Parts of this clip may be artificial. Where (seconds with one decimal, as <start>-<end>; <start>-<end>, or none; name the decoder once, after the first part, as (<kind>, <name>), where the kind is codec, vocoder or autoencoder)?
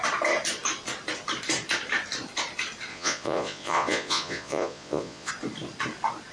2.9-5.3 (vocoder, Vocos)